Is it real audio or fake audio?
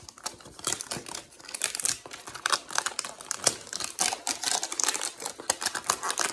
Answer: real